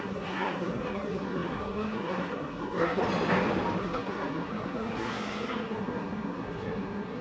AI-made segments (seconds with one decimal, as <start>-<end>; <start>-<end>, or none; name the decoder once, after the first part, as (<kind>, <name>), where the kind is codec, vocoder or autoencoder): 0.0-3.0 (codec, SNAC); 3.8-7.2